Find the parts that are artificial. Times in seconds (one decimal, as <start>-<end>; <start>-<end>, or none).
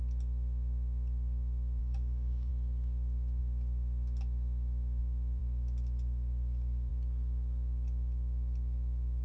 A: 1.8-2.5